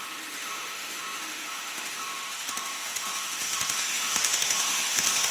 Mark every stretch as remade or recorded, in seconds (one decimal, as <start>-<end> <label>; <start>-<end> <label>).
0.0-5.3 remade